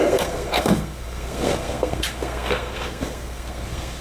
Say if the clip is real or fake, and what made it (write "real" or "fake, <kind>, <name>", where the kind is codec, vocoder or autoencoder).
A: fake, codec, SNAC